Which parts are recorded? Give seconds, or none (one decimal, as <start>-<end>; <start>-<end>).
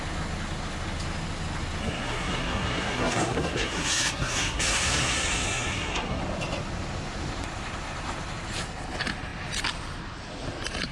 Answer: 0.0-1.8; 6.2-10.9